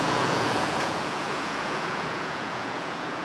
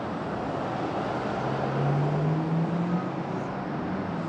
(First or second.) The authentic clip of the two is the second